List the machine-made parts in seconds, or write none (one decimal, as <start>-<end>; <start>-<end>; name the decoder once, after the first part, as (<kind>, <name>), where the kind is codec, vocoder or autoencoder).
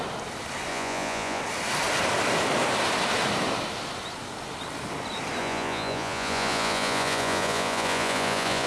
0.7-1.4 (vocoder, Vocos); 5.4-8.7